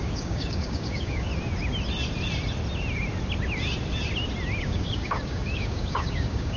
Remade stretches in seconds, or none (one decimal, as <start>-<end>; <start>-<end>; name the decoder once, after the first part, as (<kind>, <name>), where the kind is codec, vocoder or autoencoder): 0.0-1.3 (codec, DAC); 4.6-6.6